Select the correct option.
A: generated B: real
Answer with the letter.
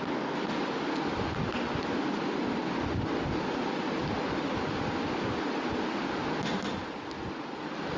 B